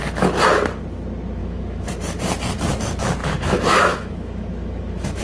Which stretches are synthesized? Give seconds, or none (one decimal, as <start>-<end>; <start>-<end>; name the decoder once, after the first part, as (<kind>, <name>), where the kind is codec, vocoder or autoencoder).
1.4-1.9 (autoencoder, DAC-VAE); 3.2-5.2